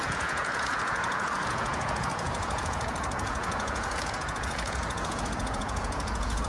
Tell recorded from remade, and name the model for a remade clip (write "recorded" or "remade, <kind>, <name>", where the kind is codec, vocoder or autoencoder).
remade, vocoder, Vocos